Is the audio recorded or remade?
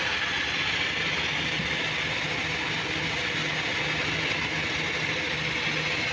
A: recorded